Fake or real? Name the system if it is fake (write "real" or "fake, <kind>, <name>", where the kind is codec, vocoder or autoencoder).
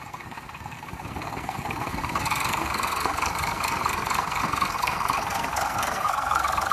fake, codec, SNAC